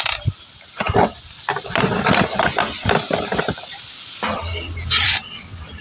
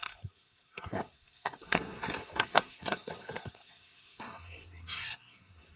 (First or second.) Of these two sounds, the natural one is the first